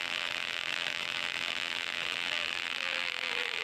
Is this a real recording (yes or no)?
no